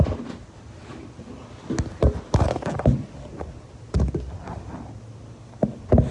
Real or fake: real